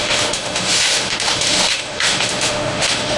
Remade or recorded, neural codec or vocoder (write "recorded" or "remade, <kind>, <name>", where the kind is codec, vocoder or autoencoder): remade, autoencoder, DAC-VAE